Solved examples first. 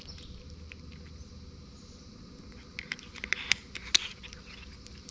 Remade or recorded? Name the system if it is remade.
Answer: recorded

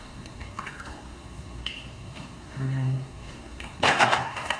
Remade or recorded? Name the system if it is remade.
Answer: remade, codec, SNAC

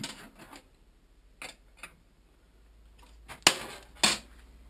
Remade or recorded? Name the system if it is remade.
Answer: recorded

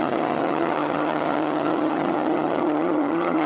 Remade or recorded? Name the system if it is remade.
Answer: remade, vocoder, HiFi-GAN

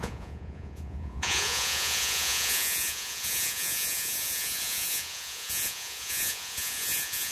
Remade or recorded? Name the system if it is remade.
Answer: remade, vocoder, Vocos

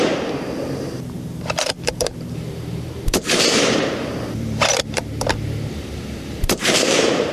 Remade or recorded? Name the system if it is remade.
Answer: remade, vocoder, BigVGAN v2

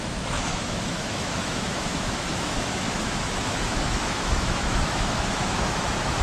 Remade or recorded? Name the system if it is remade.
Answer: remade, autoencoder, DAC-VAE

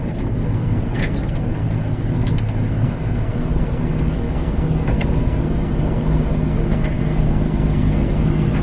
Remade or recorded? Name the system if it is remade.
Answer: remade, codec, SNAC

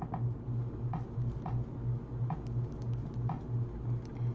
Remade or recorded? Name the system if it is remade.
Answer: recorded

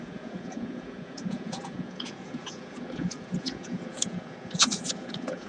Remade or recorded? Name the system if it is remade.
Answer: remade, vocoder, Vocos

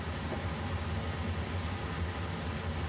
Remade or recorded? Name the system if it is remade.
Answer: recorded